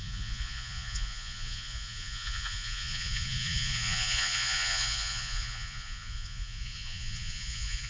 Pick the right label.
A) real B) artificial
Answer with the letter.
B